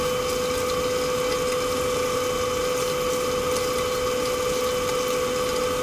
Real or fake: real